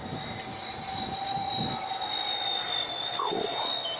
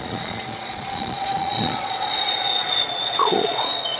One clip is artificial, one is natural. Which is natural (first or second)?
first